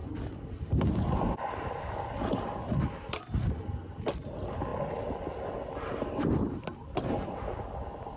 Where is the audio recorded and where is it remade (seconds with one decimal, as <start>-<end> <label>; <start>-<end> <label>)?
0.0-8.2 recorded